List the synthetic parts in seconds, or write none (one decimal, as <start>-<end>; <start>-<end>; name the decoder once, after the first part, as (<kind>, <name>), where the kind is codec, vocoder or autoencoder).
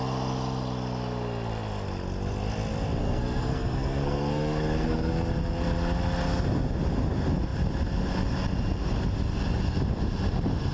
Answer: 3.0-5.1 (codec, SNAC)